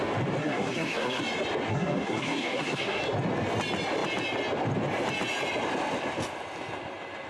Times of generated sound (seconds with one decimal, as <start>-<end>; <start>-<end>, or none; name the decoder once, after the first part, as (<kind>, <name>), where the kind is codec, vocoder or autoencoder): 0.4-1.2 (codec, SNAC); 1.7-3.0